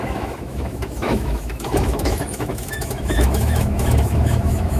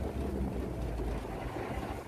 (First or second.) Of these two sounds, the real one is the second